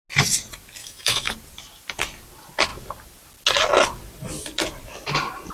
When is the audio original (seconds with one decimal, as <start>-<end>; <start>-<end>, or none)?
0.0-0.8; 1.3-5.5